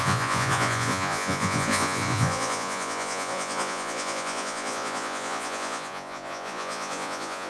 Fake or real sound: fake